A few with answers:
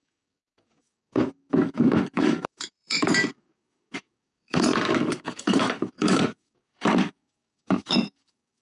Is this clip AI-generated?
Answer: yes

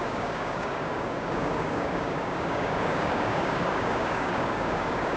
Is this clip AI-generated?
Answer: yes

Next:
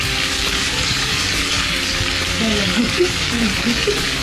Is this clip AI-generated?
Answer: yes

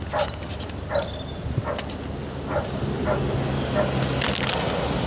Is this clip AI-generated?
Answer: no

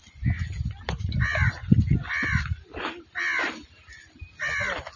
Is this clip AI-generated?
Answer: no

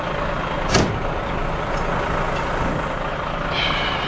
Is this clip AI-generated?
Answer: no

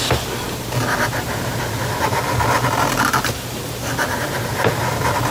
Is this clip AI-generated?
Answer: no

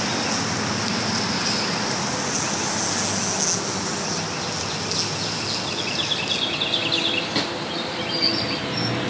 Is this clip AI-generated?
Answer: no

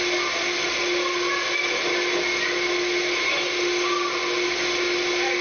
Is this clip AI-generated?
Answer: no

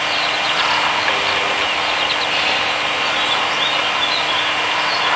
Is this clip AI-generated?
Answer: no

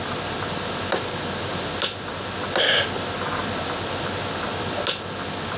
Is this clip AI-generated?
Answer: no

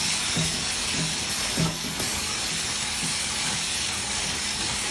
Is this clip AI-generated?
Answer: yes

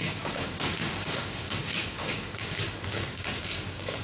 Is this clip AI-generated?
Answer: yes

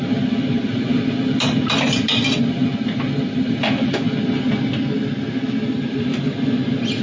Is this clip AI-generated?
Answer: no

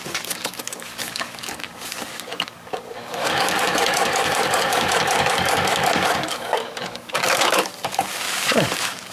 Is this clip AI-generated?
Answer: yes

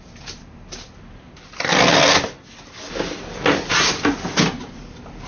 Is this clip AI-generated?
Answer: no